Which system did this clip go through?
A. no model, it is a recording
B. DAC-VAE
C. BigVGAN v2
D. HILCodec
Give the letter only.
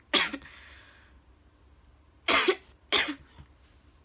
A